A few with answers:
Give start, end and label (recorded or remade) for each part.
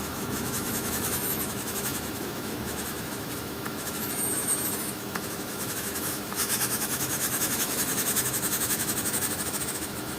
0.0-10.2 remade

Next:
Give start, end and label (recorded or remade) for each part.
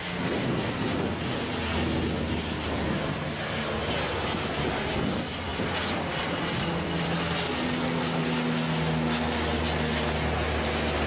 0.0-11.1 recorded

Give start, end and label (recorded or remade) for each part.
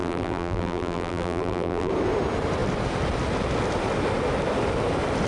0.0-1.9 remade; 1.9-5.3 recorded